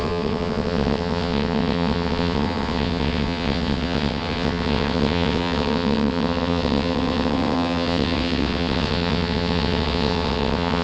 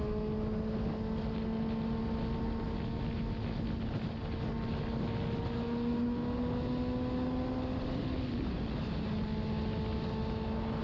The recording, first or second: second